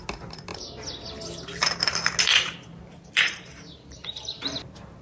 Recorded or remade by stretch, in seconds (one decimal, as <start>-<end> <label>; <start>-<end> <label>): 0.0-2.7 recorded; 2.7-4.1 remade; 4.1-5.0 recorded